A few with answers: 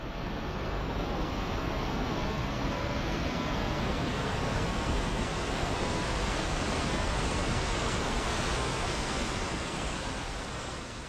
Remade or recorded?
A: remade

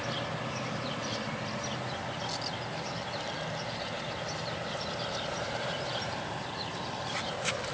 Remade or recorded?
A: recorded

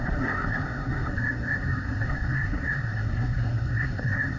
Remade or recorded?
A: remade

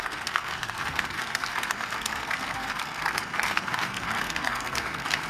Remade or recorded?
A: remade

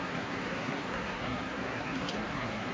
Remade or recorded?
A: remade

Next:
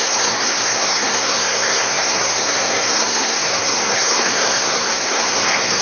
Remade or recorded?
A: remade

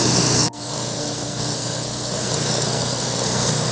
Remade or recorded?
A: remade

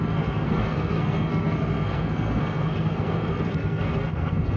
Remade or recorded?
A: remade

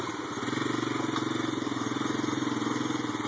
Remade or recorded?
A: recorded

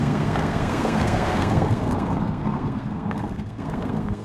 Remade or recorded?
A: remade